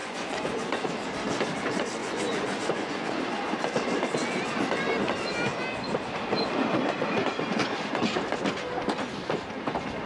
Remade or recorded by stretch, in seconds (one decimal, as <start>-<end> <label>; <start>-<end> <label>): 0.0-0.9 remade; 0.9-2.0 recorded; 2.0-3.2 remade; 3.2-10.1 recorded